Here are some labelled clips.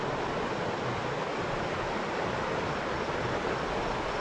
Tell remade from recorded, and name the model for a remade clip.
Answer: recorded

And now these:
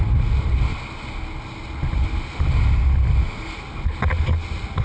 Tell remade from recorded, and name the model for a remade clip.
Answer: recorded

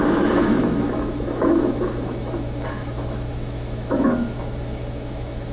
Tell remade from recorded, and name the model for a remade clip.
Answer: remade, autoencoder, DAC-VAE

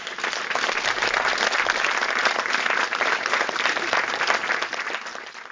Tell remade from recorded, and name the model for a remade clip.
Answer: recorded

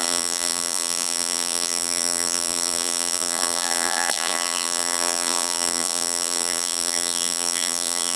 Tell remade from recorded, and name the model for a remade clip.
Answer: remade, vocoder, BigVGAN v2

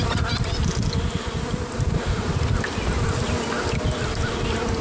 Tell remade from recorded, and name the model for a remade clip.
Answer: recorded